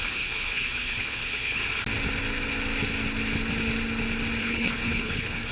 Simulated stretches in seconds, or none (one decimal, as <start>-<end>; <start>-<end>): 0.0-1.6; 4.4-5.5